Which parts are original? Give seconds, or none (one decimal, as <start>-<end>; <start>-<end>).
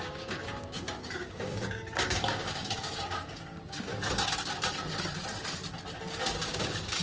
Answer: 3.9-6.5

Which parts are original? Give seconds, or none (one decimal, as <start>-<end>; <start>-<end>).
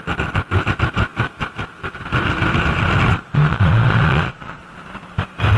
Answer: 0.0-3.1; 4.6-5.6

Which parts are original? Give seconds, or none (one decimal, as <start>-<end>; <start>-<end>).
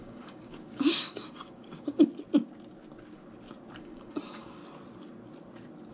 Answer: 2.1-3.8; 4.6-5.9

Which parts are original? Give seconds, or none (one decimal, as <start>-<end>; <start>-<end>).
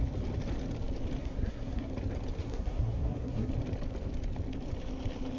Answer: 0.0-1.2; 1.9-2.4; 3.5-5.4